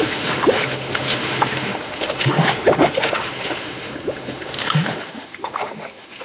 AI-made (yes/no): yes